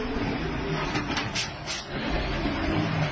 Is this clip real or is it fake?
real